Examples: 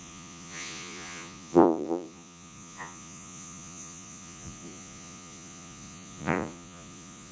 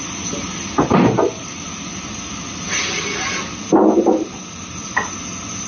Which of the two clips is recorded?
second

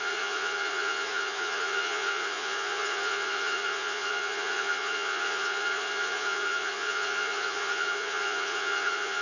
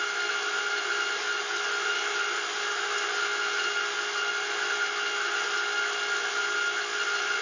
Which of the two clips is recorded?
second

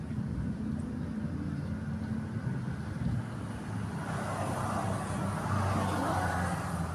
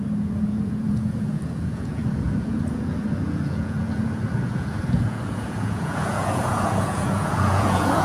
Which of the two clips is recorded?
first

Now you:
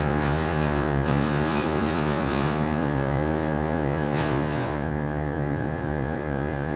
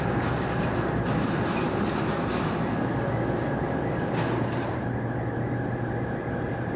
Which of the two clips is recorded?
second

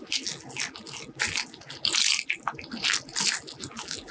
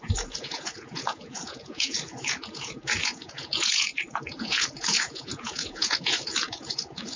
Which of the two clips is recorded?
first